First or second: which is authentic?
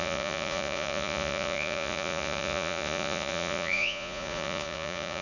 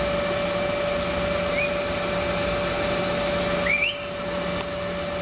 second